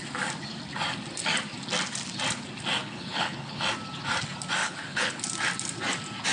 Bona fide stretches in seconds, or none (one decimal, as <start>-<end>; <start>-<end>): 0.0-2.8; 3.6-4.6; 5.2-6.3